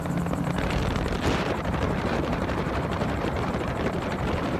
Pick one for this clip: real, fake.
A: fake